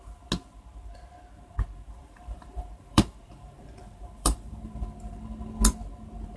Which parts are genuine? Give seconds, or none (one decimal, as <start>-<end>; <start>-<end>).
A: 0.0-2.0; 4.8-6.4